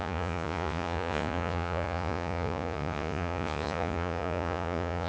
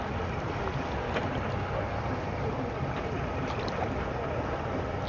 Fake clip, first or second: first